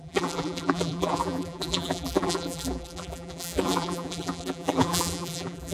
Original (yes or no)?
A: no